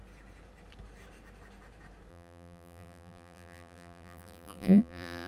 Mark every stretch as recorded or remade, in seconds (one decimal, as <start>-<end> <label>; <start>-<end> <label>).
0.0-2.1 recorded; 2.1-5.3 remade